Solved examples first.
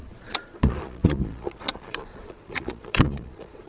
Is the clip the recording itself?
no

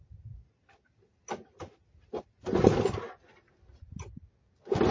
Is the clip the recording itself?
yes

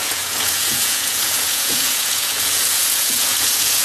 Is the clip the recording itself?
no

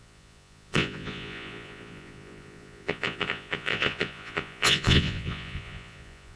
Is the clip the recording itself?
no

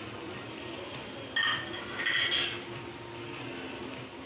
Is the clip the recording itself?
yes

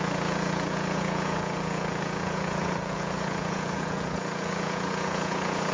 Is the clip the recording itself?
no